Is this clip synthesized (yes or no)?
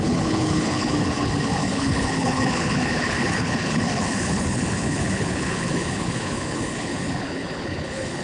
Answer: yes